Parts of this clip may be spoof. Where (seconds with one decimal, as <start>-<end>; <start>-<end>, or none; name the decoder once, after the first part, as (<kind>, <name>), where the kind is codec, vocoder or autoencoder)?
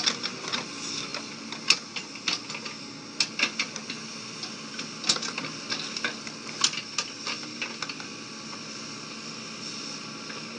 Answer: 1.1-1.9 (vocoder, BigVGAN v2)